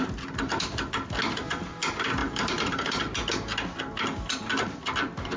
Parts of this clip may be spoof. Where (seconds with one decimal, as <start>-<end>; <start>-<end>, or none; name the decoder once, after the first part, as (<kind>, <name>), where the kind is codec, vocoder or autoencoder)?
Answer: 2.2-3.0 (vocoder, BigVGAN v2)